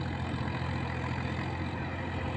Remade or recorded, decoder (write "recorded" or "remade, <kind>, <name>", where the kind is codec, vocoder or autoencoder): recorded